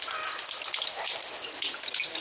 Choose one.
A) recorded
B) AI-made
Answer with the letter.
A